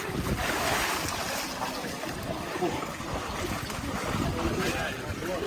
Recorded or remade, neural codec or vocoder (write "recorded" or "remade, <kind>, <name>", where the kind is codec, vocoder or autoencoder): recorded